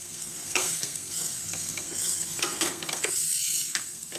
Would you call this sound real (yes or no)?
no